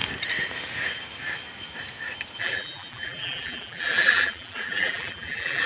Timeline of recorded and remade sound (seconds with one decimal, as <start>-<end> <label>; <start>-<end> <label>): 0.0-2.4 recorded; 2.4-5.7 remade